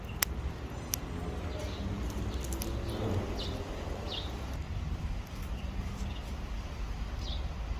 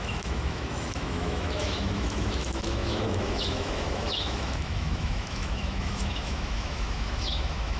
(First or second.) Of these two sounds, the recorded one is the first